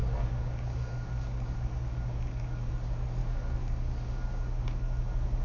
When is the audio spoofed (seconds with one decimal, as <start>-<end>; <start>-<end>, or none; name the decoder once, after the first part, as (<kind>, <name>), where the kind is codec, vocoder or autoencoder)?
0.0-2.7 (codec, DAC); 3.2-5.4